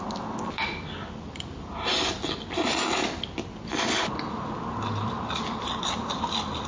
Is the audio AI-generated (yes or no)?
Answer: no